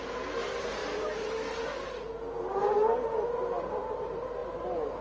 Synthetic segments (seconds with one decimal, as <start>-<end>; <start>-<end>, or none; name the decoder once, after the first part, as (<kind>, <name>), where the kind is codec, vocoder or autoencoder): none

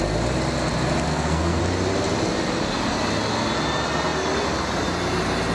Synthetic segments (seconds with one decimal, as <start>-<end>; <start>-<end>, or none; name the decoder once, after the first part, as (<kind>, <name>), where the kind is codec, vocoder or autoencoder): 1.1-1.6 (codec, SNAC)